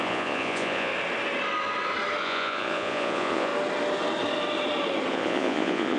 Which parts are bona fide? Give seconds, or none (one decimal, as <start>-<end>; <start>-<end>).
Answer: 0.9-2.2; 3.5-5.1